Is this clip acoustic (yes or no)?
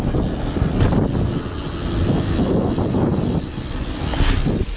yes